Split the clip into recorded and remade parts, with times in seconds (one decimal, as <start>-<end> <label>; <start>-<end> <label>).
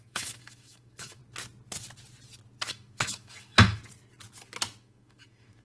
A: 0.0-1.2 remade; 1.2-2.7 recorded; 2.7-3.8 remade; 3.8-4.8 recorded; 4.8-5.6 remade